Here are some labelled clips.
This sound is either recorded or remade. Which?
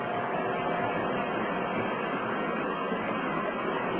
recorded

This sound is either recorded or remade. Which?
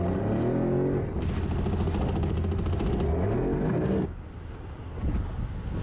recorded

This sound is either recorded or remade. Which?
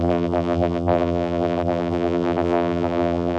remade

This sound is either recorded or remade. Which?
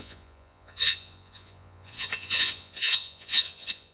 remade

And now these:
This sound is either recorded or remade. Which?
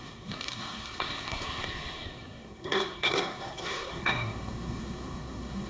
remade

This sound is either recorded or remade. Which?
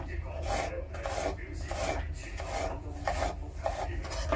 recorded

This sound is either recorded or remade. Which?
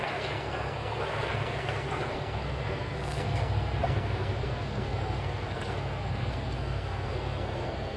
remade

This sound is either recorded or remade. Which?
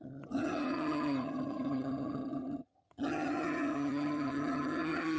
remade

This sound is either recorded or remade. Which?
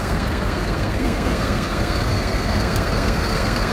remade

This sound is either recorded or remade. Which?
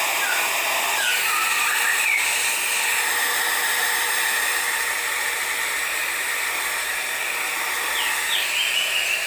recorded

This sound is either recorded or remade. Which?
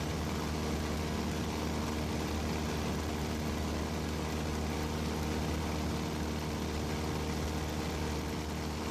recorded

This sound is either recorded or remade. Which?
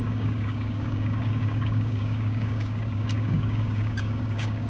remade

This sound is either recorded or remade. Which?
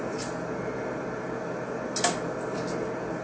recorded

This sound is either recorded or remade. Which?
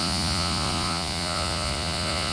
remade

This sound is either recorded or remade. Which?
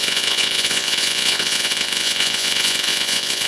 remade